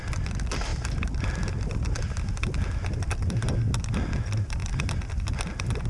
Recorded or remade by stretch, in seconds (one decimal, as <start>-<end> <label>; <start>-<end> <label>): 0.0-5.9 recorded